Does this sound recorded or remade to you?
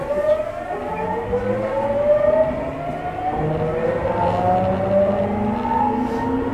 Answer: recorded